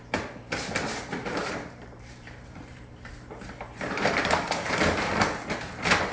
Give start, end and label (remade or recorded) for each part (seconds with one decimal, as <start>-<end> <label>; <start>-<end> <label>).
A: 0.0-1.4 recorded; 1.4-5.1 remade; 5.1-6.1 recorded